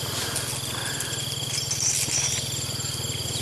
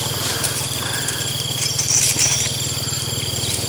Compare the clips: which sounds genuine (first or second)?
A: first